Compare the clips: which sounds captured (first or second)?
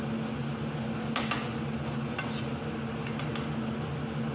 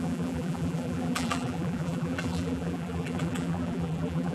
first